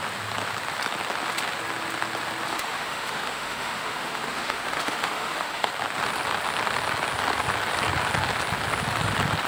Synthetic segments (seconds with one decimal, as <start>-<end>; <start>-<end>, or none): 2.5-5.7